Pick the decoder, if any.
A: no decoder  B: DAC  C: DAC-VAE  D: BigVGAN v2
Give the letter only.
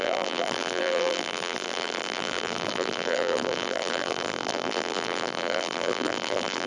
D